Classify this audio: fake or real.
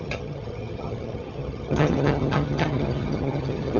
fake